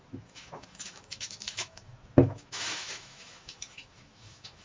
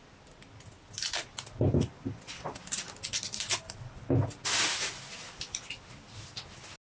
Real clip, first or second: second